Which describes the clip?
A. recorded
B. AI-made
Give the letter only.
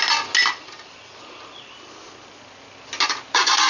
A